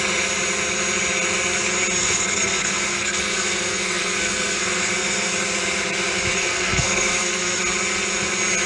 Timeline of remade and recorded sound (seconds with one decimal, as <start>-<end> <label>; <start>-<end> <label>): 0.0-2.0 recorded; 2.0-5.3 remade; 5.3-6.3 recorded; 6.3-7.6 remade; 7.6-8.7 recorded